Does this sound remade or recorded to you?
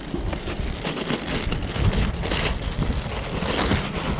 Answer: recorded